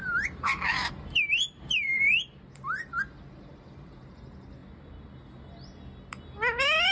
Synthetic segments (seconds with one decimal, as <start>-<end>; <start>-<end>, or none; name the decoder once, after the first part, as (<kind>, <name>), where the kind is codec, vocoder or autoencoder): 0.0-3.9 (vocoder, BigVGAN v2)